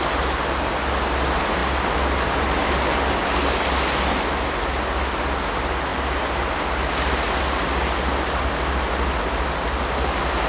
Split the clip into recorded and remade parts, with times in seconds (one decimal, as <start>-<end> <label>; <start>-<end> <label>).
0.0-10.5 recorded

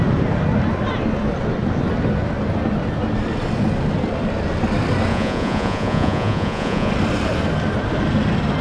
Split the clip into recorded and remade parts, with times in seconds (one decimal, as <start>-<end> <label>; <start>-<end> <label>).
0.0-5.1 recorded; 5.1-6.9 remade; 6.9-8.6 recorded